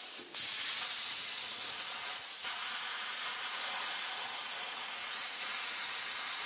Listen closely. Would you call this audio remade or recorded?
remade